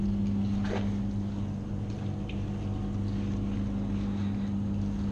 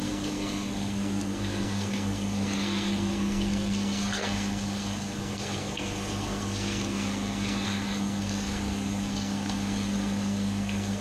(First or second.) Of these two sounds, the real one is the first